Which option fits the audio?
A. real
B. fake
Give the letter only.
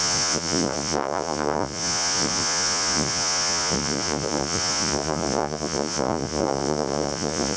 B